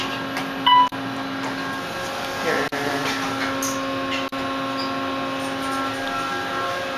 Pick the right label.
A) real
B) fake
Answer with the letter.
A